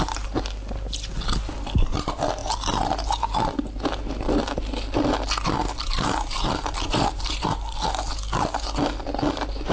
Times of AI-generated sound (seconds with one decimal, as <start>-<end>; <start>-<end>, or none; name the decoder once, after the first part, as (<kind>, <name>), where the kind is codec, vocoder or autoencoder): 5.6-7.7 (vocoder, BigVGAN v2)